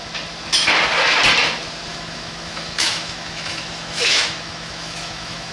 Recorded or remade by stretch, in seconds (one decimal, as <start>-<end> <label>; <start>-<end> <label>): 0.0-1.9 recorded; 1.9-5.5 remade